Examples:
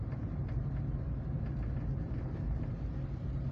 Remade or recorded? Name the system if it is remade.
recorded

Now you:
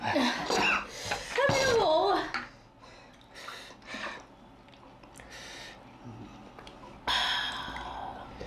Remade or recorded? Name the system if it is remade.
recorded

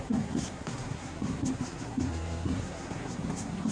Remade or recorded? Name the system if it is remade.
remade, codec, SNAC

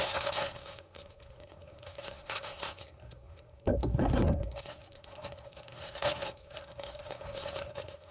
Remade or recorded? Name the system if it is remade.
remade, codec, SNAC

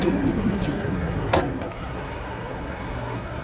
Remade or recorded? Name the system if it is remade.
remade, codec, SNAC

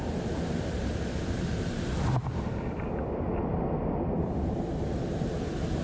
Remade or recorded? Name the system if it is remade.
recorded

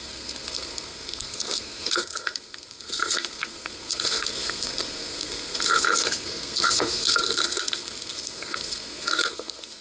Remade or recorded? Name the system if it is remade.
remade, codec, SNAC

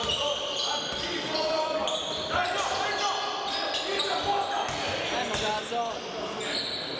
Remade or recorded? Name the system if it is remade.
recorded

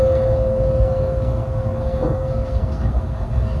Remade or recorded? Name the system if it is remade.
remade, codec, SNAC